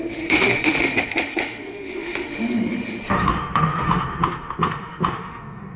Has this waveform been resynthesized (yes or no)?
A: yes